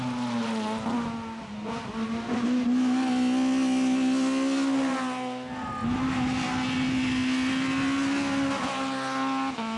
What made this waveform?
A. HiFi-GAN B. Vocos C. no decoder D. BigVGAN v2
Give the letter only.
C